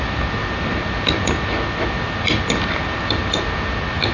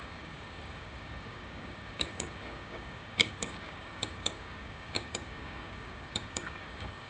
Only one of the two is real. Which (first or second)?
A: first